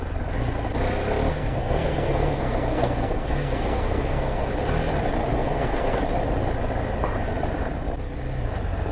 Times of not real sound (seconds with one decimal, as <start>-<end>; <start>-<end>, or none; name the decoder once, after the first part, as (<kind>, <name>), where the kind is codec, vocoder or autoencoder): 1.3-4.5 (codec, SNAC); 5.3-6.0